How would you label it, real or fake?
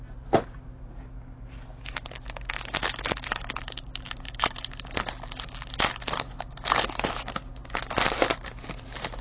real